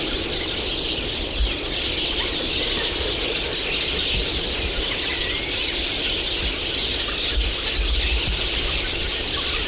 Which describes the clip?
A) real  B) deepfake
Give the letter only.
A